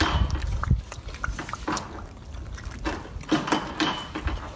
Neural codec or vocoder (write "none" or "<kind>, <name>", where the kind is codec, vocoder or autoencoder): none